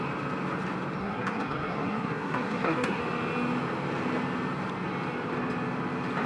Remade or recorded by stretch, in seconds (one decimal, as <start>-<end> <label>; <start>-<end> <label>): 0.0-1.0 recorded; 1.0-3.0 remade; 3.0-6.3 recorded